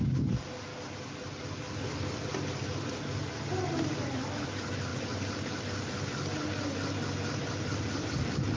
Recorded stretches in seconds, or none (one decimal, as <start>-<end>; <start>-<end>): 0.0-8.6